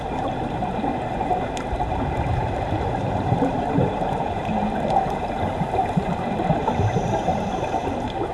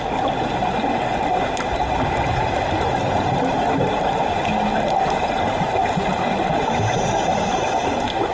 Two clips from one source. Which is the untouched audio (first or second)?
second